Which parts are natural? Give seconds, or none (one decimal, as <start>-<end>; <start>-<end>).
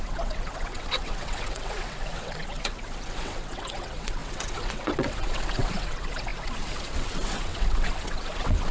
none